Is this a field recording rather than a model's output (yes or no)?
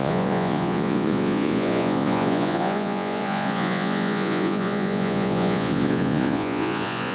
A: no